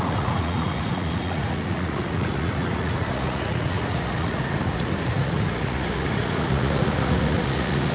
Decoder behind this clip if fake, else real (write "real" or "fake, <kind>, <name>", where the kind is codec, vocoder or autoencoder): fake, vocoder, Vocos